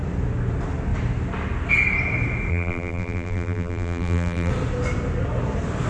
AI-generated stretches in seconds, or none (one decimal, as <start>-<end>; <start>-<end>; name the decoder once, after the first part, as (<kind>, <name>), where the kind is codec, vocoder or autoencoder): 2.5-4.5 (vocoder, BigVGAN v2)